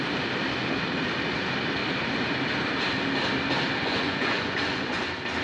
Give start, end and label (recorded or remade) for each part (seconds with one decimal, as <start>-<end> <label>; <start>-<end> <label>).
0.0-3.8 recorded; 3.8-5.0 remade; 5.0-5.4 recorded